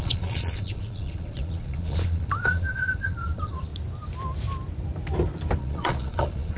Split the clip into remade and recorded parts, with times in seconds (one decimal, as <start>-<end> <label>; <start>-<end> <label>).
0.0-3.7 remade; 3.7-5.6 recorded; 5.6-6.6 remade